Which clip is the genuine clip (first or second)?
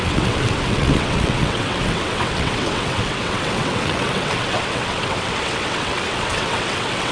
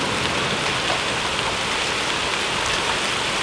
second